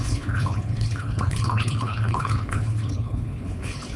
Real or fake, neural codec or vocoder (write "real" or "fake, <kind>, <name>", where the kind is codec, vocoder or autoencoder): fake, codec, HILCodec